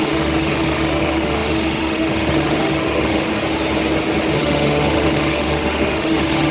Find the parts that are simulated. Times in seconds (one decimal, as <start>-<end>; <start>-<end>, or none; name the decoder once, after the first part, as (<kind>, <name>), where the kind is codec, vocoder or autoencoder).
0.0-3.3 (autoencoder, DAC-VAE); 4.4-6.5